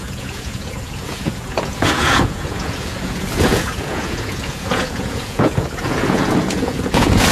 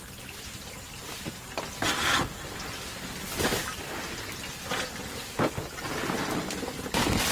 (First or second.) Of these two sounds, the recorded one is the second